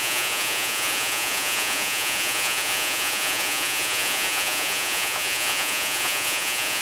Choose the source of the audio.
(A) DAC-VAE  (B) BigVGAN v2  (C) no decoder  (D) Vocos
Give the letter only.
D